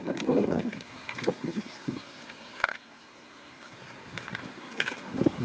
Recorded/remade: remade